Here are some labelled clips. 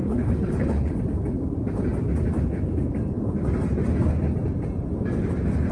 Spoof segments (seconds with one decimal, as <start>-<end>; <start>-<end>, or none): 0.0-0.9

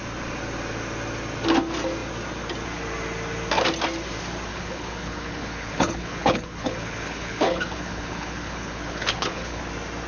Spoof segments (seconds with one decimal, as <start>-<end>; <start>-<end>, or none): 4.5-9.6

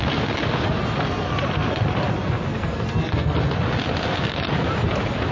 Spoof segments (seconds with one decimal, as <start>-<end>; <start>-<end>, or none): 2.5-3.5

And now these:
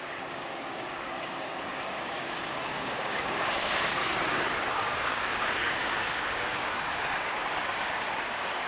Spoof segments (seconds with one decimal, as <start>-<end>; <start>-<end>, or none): 0.0-4.0; 4.7-8.7

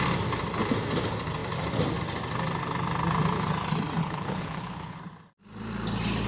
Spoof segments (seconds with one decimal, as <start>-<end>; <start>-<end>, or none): 4.0-5.0